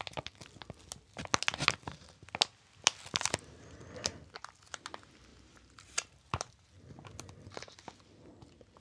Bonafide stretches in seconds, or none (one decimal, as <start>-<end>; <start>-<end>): 0.0-5.3; 6.7-8.8